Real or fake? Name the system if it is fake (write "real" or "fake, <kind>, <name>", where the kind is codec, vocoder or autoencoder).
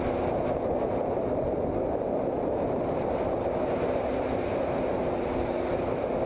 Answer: real